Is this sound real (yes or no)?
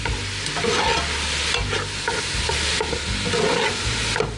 yes